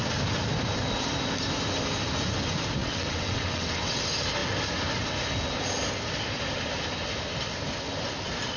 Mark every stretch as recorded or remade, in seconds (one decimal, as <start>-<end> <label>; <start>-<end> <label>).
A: 0.0-2.8 recorded; 2.8-4.0 remade; 4.0-8.6 recorded